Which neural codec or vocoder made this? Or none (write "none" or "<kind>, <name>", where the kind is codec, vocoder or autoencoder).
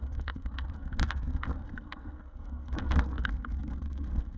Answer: codec, SNAC